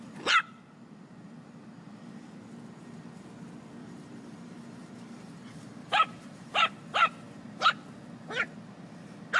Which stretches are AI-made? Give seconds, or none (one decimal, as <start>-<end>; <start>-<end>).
3.8-6.7